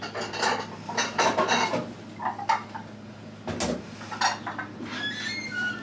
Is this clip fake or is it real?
real